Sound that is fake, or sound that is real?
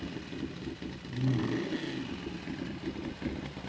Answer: real